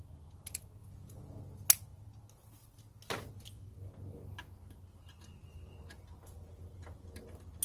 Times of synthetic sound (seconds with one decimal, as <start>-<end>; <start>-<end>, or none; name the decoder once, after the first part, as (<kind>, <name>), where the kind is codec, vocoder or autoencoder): 0.8-1.4 (vocoder, Vocos)